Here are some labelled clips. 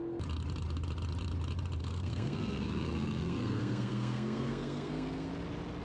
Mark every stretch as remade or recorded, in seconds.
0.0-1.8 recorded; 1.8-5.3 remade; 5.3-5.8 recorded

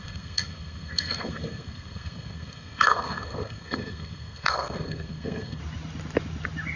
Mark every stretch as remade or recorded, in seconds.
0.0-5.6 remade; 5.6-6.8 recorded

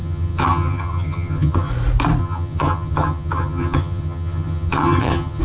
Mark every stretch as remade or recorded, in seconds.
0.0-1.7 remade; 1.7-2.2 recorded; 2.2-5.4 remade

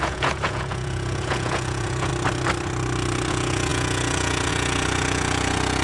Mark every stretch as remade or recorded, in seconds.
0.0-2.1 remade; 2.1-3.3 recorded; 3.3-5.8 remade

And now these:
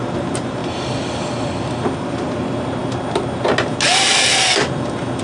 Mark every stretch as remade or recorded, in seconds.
0.0-0.6 recorded; 0.6-2.3 remade; 2.3-5.2 recorded

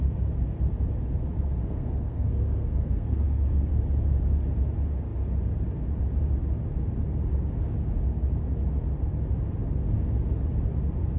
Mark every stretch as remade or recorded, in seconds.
0.0-1.6 recorded; 1.6-3.7 remade; 3.7-11.2 recorded

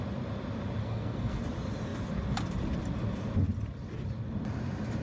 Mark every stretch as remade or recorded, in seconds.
0.0-0.8 recorded; 0.8-1.4 remade; 1.4-5.0 recorded

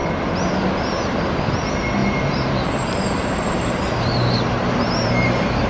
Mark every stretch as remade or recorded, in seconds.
0.0-2.0 recorded; 2.0-5.7 remade